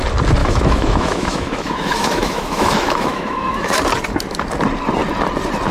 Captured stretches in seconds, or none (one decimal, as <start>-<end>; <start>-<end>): 0.0-0.4; 3.8-5.7